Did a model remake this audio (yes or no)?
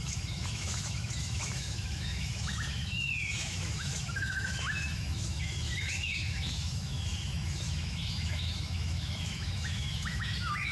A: yes